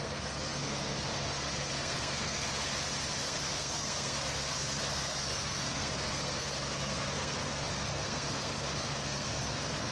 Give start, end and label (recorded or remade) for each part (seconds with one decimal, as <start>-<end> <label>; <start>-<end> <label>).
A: 0.0-2.7 remade; 2.7-3.2 recorded; 3.2-9.9 remade